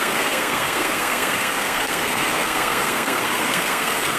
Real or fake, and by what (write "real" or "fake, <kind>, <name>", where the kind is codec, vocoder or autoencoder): fake, codec, SNAC